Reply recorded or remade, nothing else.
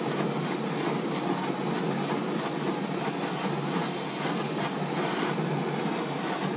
recorded